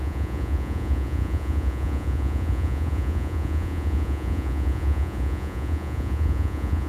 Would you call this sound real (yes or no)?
no